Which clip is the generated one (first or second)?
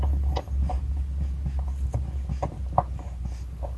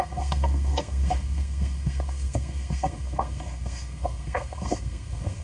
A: second